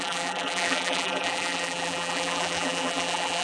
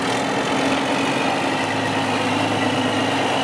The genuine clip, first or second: second